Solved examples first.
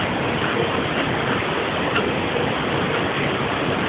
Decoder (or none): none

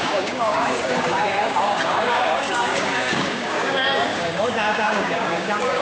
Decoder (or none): codec, DAC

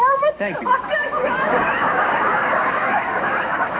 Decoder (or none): codec, DAC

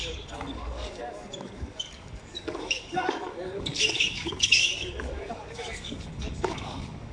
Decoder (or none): codec, DAC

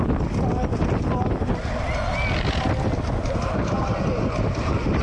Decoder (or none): none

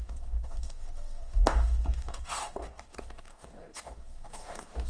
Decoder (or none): codec, DAC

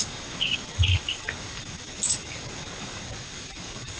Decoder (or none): codec, DAC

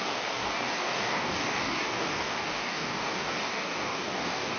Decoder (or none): codec, DAC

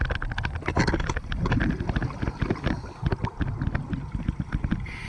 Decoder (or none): none